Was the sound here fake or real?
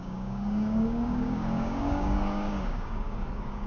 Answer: fake